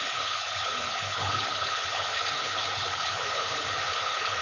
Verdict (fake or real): fake